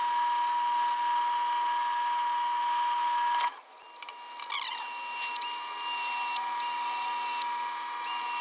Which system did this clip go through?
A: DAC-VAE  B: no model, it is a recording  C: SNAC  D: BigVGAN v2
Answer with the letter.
B